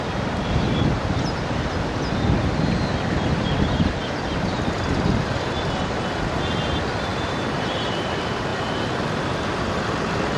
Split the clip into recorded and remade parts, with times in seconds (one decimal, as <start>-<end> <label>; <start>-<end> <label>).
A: 0.0-7.1 recorded; 7.1-8.1 remade; 8.1-10.4 recorded